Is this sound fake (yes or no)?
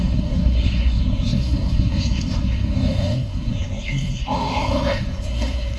yes